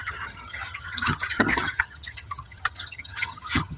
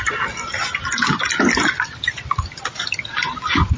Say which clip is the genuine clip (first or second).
second